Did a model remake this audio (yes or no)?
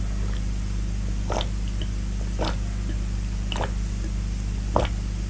no